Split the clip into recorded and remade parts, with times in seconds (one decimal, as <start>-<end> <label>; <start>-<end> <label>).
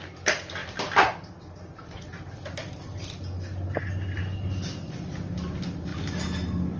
0.0-0.6 recorded; 0.6-2.0 remade; 2.0-6.8 recorded